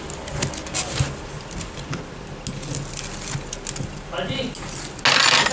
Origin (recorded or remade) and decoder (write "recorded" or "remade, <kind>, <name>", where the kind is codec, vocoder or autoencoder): recorded